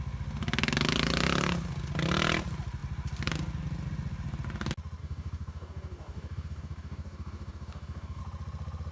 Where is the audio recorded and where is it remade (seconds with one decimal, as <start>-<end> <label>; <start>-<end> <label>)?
0.0-5.0 recorded; 5.0-8.2 remade; 8.2-8.9 recorded